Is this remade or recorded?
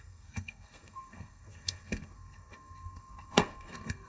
remade